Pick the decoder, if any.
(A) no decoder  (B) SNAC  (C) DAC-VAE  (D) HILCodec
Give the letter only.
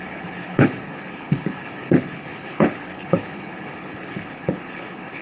D